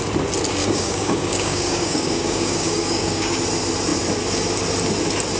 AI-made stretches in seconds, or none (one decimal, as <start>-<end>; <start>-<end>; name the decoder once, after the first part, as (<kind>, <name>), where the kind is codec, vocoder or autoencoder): 0.6-3.4 (codec, DAC)